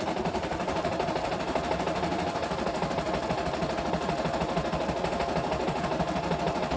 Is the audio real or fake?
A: real